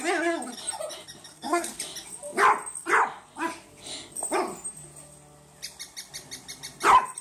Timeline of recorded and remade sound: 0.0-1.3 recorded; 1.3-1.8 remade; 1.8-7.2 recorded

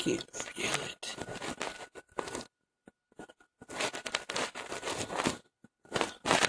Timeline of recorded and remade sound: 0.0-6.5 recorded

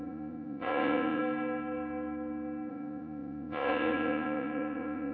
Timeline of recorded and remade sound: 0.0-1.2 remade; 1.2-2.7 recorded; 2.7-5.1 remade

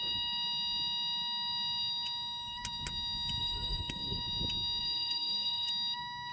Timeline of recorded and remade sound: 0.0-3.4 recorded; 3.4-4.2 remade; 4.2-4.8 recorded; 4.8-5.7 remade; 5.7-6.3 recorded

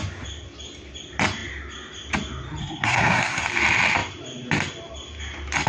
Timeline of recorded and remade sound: 0.0-2.6 recorded; 2.6-3.4 remade; 3.4-5.7 recorded

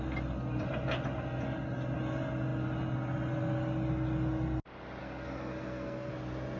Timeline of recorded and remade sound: 0.0-5.0 recorded; 5.0-6.1 remade; 6.1-6.6 recorded

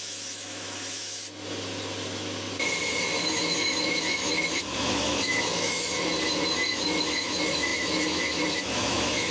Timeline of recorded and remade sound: 0.0-1.2 remade; 1.2-3.2 recorded; 3.2-6.1 remade; 6.1-6.7 recorded; 6.7-9.3 remade

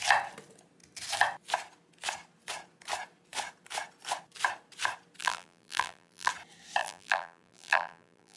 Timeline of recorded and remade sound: 0.0-5.2 recorded; 5.2-6.3 remade; 6.3-6.8 recorded; 6.8-8.4 remade